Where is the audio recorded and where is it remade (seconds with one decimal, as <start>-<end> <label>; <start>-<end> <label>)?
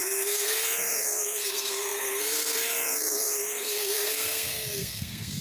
0.0-5.4 remade